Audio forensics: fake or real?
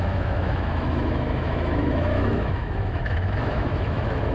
fake